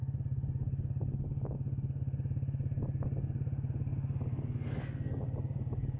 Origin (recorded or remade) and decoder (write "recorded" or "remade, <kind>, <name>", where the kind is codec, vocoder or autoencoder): recorded